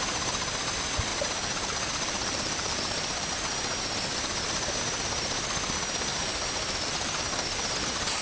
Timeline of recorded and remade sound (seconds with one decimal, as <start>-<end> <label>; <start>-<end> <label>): 0.0-1.1 recorded; 1.1-3.3 remade; 3.3-6.1 recorded; 6.1-7.2 remade; 7.2-8.2 recorded